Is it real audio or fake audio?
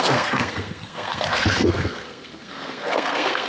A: fake